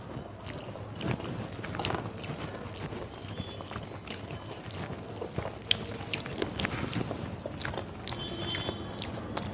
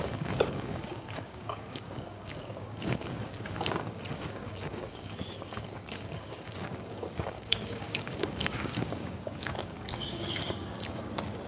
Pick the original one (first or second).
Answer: first